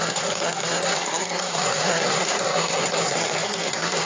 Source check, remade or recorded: remade